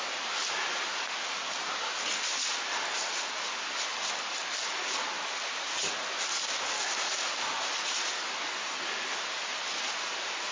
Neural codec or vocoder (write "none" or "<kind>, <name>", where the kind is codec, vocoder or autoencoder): none